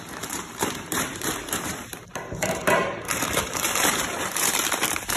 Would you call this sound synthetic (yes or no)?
yes